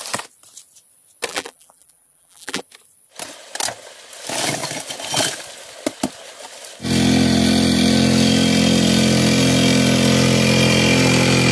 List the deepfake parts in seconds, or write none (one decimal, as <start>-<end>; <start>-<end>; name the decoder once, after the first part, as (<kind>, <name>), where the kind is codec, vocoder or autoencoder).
1.3-2.6 (vocoder, BigVGAN v2)